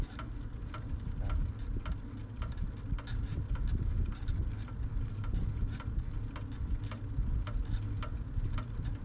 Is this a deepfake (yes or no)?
no